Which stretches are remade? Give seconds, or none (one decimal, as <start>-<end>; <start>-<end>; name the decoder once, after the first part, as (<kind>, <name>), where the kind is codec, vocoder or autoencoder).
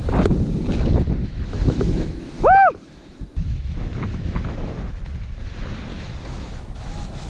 1.2-4.9 (autoencoder, DAC-VAE); 5.9-7.3